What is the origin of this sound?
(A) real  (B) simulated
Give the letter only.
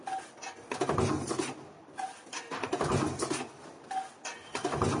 A